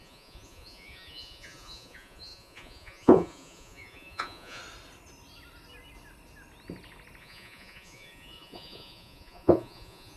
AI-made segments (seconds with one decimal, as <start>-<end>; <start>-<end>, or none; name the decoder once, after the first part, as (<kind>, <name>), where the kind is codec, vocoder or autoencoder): 0.0-4.6 (vocoder, Vocos); 7.2-10.2